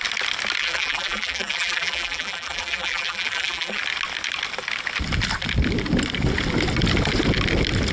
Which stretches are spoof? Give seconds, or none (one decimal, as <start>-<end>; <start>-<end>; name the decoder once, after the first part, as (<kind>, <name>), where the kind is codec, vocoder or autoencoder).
0.6-3.8 (vocoder, BigVGAN v2)